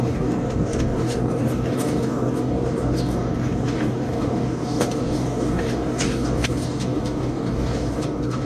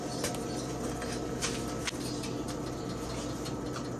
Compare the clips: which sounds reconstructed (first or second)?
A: first